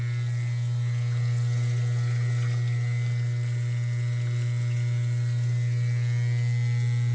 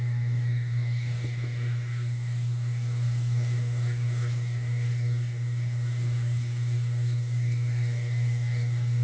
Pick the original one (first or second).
first